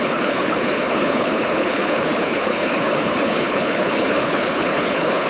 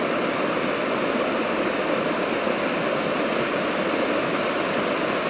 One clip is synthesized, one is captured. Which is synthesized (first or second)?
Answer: first